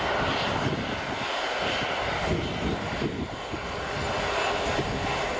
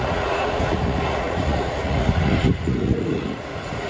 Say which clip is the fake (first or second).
second